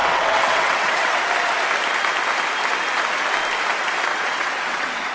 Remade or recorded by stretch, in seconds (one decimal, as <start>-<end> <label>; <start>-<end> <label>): 0.0-1.2 remade; 1.2-4.1 recorded; 4.1-5.1 remade